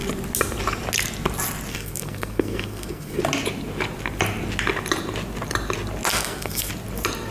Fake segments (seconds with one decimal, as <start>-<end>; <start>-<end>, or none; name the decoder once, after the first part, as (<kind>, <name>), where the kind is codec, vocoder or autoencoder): 1.7-3.2 (codec, SNAC); 6.1-6.7

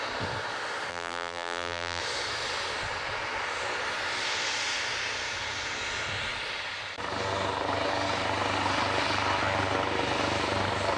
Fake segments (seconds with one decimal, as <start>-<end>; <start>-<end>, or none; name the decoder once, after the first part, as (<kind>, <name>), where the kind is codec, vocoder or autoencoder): 0.9-2.0 (vocoder, BigVGAN v2)

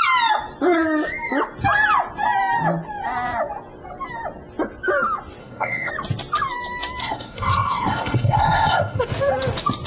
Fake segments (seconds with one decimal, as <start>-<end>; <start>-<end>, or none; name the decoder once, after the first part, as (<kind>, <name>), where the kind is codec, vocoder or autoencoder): 5.4-5.9 (codec, SNAC); 7.0-9.0

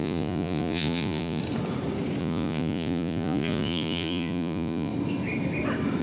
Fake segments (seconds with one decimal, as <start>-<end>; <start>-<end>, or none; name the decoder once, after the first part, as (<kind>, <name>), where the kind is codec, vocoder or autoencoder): 0.0-1.4 (vocoder, Vocos); 2.2-4.9

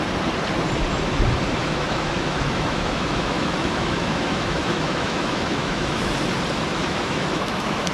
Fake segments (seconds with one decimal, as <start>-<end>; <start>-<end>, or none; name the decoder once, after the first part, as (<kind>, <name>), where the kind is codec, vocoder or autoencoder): 1.6-6.1 (autoencoder, DAC-VAE); 6.8-7.9

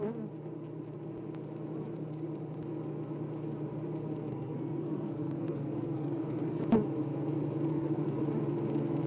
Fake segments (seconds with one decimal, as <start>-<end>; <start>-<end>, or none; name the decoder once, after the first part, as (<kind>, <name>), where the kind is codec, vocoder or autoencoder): 4.3-6.6 (codec, SNAC); 7.7-8.2